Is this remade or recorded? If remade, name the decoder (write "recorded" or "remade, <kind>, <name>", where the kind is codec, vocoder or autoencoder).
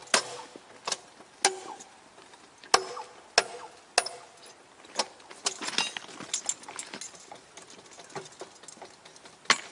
recorded